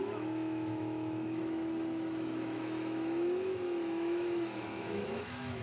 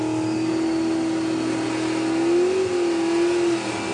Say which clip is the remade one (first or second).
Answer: first